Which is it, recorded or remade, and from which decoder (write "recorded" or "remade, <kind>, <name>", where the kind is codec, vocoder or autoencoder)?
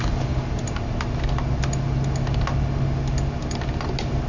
recorded